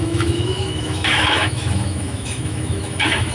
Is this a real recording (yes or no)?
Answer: no